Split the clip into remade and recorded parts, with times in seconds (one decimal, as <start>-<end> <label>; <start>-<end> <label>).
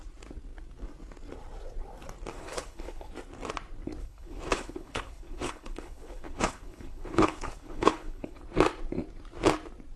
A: 0.0-2.3 recorded; 2.3-3.1 remade; 3.1-4.0 recorded; 4.0-8.4 remade; 8.4-10.0 recorded